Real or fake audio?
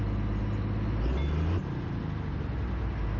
real